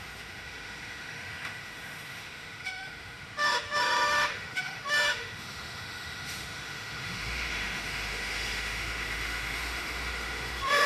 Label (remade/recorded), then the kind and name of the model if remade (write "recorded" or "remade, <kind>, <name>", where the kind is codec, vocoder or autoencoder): remade, autoencoder, DAC-VAE